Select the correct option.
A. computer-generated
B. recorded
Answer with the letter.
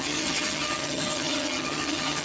A